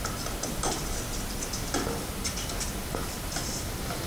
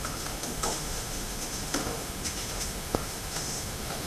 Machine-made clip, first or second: second